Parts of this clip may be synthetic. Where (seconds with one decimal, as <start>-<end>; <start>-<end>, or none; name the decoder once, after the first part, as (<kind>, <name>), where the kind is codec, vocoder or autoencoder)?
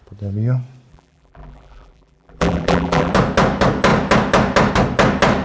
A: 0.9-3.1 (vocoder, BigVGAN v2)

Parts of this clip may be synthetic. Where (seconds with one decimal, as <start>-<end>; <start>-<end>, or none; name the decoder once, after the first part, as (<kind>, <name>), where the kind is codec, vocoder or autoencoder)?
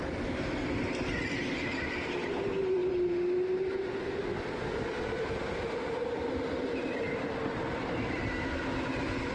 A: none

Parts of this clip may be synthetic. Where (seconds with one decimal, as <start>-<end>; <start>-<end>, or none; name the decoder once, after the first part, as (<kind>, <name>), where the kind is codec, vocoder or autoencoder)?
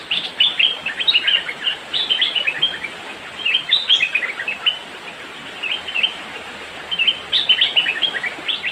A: 0.0-3.9 (vocoder, BigVGAN v2); 7.9-8.7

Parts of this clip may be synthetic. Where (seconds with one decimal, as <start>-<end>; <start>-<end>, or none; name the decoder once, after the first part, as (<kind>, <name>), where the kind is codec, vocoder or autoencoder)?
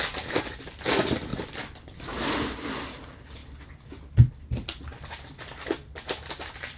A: 1.3-3.0 (vocoder, BigVGAN v2)